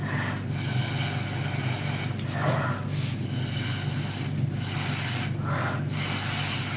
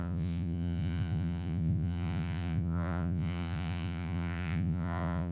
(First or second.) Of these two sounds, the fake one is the second